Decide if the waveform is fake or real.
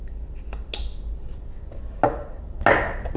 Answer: real